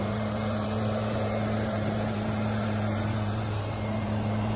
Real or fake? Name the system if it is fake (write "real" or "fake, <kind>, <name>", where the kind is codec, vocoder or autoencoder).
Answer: fake, vocoder, BigVGAN v2